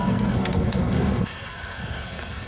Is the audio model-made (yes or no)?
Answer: yes